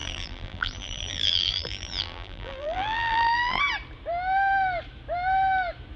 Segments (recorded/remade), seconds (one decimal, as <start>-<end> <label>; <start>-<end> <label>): 0.0-3.6 remade; 3.6-6.0 recorded